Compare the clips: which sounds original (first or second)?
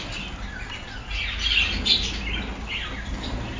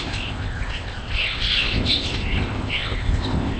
first